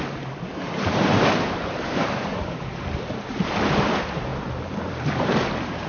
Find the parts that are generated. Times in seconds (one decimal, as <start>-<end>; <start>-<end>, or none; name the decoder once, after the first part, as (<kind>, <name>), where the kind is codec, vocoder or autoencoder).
0.0-5.9 (vocoder, BigVGAN v2)